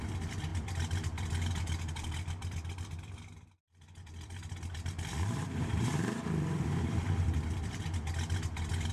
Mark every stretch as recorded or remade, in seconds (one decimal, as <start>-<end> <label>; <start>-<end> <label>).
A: 0.0-8.9 remade